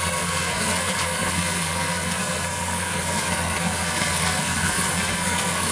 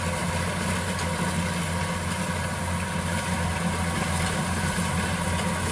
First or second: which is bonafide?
second